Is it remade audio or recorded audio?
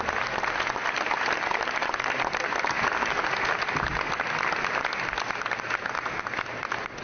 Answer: recorded